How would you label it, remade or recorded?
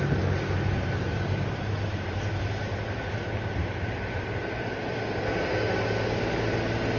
recorded